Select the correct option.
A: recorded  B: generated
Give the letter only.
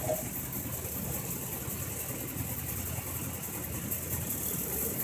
A